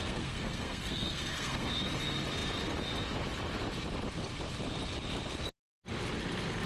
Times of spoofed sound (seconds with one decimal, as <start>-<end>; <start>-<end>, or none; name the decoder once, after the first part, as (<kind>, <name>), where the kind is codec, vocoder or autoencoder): 0.0-1.7 (codec, SNAC)